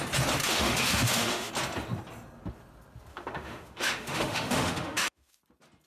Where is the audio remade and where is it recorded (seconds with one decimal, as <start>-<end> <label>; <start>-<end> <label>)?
0.0-0.4 recorded; 0.4-1.5 remade; 1.5-3.1 recorded; 3.1-5.4 remade; 5.4-5.9 recorded

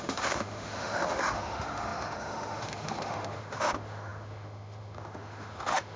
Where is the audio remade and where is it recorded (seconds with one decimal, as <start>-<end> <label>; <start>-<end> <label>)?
0.0-6.0 remade

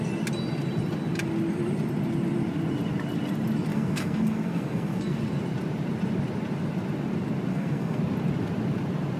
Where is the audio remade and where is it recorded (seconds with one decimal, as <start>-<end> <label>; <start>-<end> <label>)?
0.0-3.7 recorded; 3.7-5.2 remade; 5.2-7.5 recorded; 7.5-8.0 remade; 8.0-9.2 recorded